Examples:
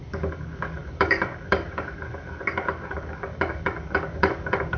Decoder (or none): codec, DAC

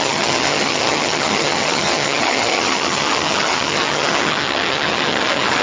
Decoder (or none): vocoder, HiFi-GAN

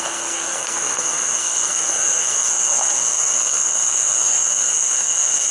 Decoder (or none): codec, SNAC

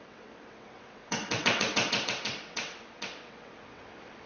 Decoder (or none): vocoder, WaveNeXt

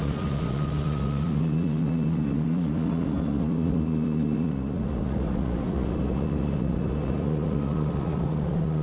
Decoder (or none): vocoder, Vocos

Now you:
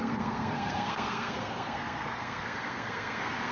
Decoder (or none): codec, SNAC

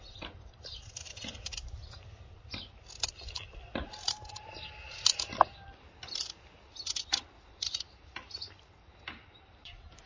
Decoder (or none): none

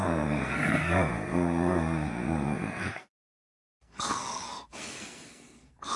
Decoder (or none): codec, SNAC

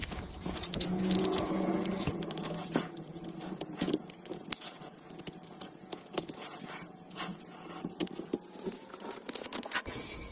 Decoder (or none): vocoder, Vocos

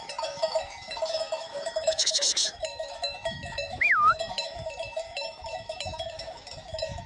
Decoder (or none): autoencoder, DAC-VAE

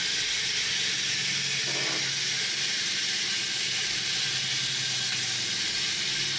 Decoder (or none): none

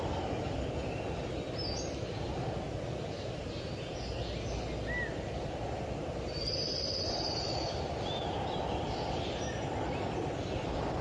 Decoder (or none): none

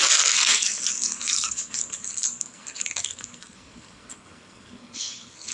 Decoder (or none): codec, SNAC